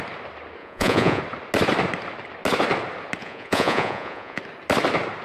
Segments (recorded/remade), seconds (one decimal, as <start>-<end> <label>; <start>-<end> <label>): 0.0-0.6 recorded; 0.6-1.2 remade; 1.2-3.2 recorded; 3.2-4.4 remade; 4.4-5.2 recorded